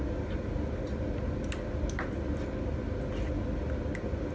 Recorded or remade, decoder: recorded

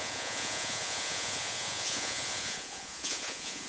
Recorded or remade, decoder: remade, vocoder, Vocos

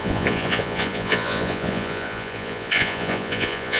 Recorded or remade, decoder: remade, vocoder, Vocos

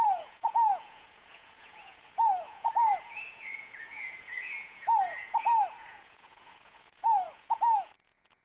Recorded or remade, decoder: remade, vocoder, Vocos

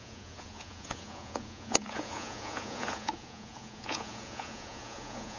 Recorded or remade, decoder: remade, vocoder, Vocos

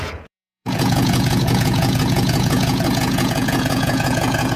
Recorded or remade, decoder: remade, vocoder, Vocos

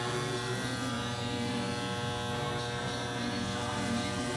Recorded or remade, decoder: recorded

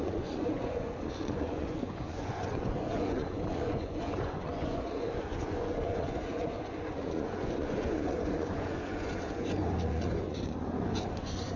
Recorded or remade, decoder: remade, vocoder, Vocos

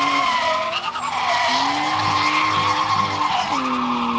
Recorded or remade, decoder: recorded